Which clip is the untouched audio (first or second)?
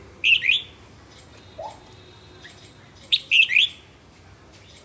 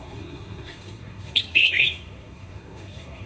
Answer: first